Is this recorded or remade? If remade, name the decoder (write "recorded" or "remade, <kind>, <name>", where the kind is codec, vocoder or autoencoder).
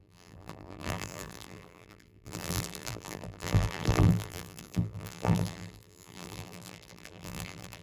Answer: remade, vocoder, BigVGAN v2